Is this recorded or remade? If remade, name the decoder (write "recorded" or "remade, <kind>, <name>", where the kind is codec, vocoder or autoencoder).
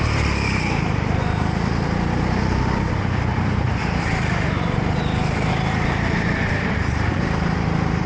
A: remade, vocoder, BigVGAN v2